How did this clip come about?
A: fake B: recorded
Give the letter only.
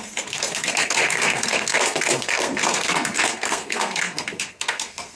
A